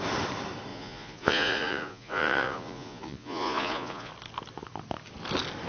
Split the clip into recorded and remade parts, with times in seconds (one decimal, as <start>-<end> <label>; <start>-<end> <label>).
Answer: 0.0-0.7 recorded; 0.7-4.1 remade; 4.1-5.7 recorded